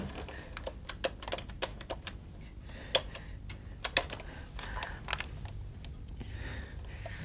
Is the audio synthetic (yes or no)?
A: no